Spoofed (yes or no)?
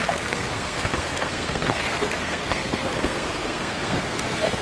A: yes